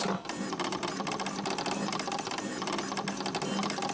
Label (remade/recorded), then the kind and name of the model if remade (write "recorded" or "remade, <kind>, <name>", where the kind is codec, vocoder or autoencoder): recorded